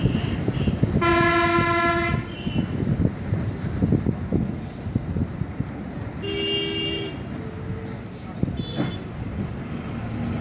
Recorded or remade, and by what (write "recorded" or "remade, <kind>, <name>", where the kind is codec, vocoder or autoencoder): recorded